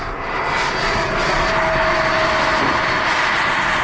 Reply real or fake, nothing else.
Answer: real